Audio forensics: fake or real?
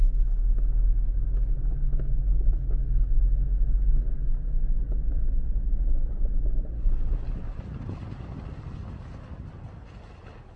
real